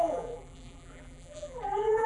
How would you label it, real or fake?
fake